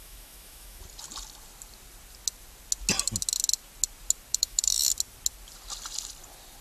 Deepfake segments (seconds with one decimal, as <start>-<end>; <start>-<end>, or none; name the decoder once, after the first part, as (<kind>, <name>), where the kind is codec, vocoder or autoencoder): 0.0-0.8 (autoencoder, DAC-VAE); 4.3-4.9